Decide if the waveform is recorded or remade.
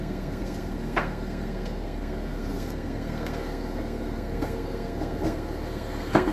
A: remade